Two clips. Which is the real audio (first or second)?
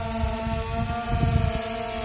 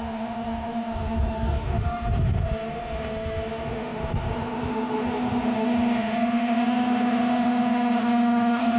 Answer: first